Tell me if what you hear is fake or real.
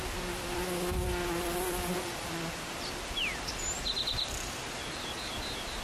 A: real